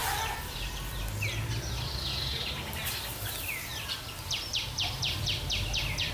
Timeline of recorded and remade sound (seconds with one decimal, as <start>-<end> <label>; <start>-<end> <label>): 0.0-1.0 remade; 1.0-3.7 recorded; 3.7-6.1 remade